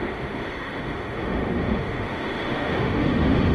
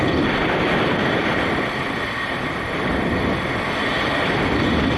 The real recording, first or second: second